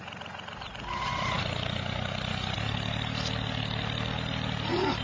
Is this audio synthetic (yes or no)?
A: no